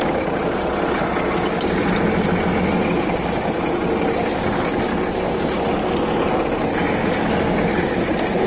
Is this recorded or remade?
recorded